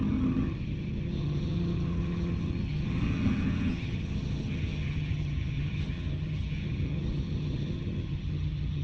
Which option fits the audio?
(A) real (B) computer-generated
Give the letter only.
B